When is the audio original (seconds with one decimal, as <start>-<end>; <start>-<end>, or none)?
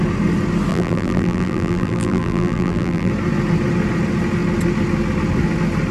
0.0-0.7; 3.1-5.9